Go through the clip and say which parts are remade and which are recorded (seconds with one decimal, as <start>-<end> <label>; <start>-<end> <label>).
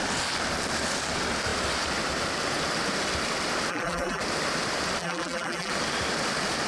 0.0-3.7 recorded; 3.7-4.2 remade; 4.2-5.0 recorded; 5.0-5.7 remade; 5.7-6.7 recorded